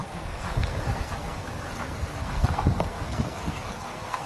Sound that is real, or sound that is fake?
fake